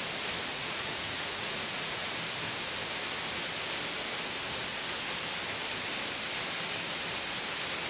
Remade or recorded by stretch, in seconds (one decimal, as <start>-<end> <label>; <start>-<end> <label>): 0.0-0.5 recorded; 0.5-2.1 remade; 2.1-7.9 recorded